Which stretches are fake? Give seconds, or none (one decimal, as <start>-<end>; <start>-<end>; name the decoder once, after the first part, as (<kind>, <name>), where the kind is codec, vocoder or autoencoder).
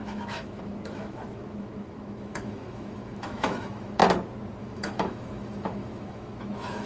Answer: 0.0-4.0 (autoencoder, DAC-VAE); 4.6-6.9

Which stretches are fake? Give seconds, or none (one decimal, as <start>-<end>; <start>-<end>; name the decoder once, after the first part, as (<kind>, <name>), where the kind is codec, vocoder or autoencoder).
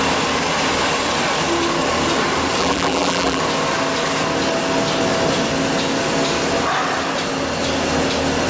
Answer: 2.6-3.4 (vocoder, BigVGAN v2)